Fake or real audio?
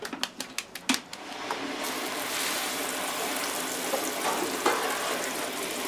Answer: real